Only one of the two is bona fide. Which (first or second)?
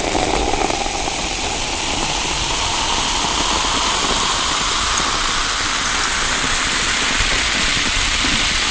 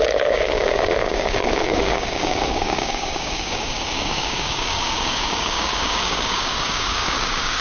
first